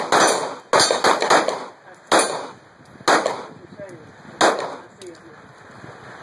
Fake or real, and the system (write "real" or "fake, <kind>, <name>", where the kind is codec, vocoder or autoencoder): real